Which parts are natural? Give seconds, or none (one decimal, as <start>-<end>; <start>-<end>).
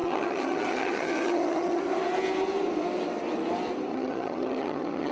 1.8-3.9